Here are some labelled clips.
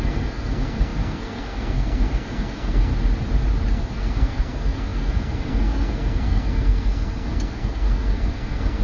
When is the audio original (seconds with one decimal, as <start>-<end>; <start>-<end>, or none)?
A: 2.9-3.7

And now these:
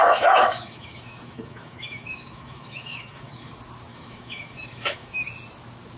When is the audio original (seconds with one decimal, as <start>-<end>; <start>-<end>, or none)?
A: 3.5-3.9; 5.3-6.0

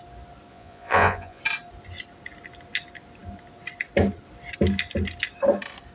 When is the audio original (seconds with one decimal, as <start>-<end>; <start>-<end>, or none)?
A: 0.0-0.5; 1.4-5.9

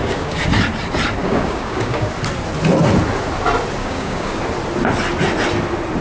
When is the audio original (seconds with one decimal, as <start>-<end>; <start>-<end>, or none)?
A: 0.5-1.2; 2.1-3.8; 4.4-6.0

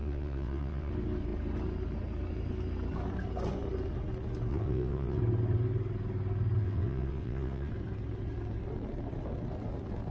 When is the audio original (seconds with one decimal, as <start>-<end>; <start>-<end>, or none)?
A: 0.9-4.5; 5.2-6.6; 7.7-10.1